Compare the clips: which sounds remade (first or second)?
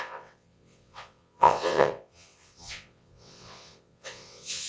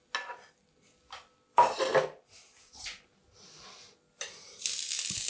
first